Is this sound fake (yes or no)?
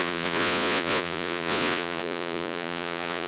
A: yes